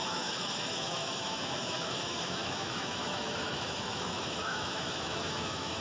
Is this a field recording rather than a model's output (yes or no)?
no